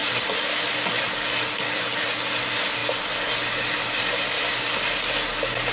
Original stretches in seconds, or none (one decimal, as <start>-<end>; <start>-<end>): 0.0-5.7

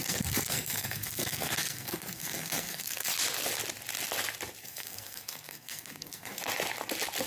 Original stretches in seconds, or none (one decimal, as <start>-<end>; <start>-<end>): 3.1-4.6; 6.4-7.3

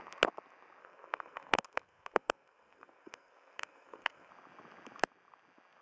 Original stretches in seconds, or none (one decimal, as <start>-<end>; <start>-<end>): 0.0-0.8; 4.3-5.8

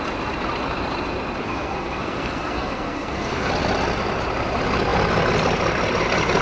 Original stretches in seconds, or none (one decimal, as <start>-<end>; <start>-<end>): 0.0-1.4; 3.5-6.4

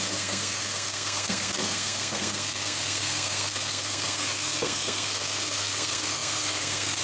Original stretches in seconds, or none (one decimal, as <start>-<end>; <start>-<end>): none

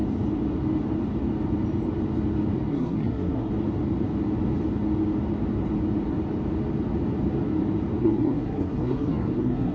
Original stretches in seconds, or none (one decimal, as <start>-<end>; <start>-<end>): 0.0-2.7; 3.5-8.0